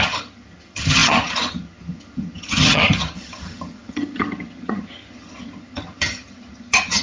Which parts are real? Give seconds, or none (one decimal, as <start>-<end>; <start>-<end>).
none